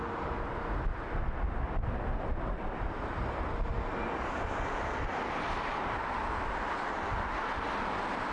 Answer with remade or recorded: recorded